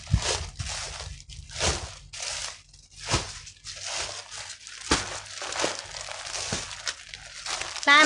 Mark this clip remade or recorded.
recorded